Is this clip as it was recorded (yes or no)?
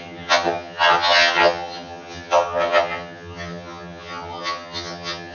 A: no